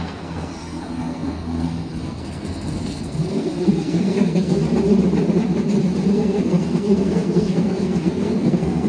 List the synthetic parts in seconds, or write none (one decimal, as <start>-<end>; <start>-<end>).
0.0-4.6; 6.1-8.9